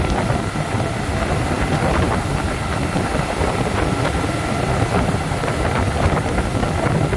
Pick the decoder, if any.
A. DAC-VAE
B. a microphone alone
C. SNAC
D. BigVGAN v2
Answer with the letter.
B